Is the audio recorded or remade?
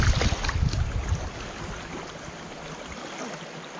recorded